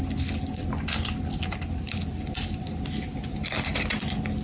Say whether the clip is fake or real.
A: real